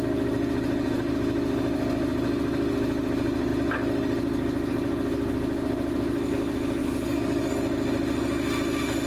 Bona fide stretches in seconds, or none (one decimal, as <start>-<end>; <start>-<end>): 0.0-6.8; 7.5-9.1